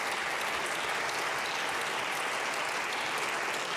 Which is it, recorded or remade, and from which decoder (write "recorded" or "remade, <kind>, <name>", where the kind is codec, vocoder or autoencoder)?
recorded